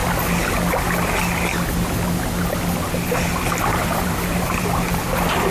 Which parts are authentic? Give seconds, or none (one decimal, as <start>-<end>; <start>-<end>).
0.0-3.7; 5.0-5.5